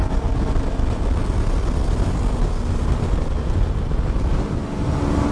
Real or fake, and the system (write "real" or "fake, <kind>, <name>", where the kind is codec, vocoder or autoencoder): real